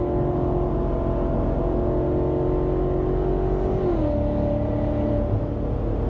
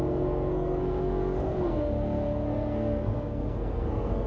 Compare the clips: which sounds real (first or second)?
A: first